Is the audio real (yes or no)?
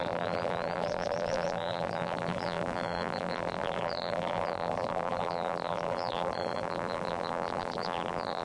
no